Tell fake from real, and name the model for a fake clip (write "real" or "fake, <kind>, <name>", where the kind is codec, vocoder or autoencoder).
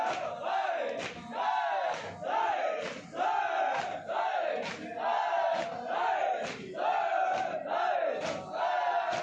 real